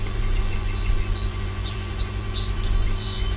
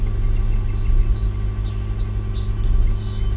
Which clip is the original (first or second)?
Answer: second